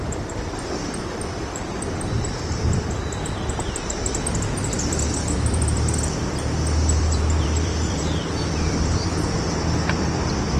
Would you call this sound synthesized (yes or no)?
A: yes